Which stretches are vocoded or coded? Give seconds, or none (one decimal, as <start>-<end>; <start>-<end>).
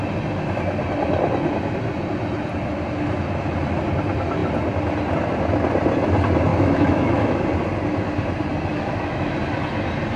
6.5-7.4; 8.7-9.4